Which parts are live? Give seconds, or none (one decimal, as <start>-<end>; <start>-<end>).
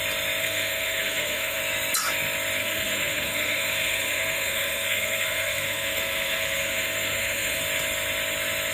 0.0-0.4; 1.6-2.6; 7.6-8.7